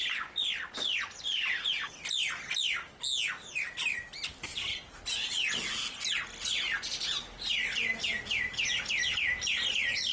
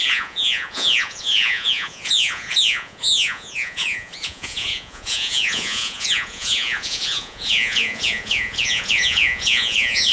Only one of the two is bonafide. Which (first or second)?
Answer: first